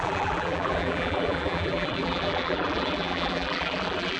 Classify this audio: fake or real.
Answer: fake